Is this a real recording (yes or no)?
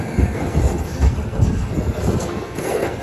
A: no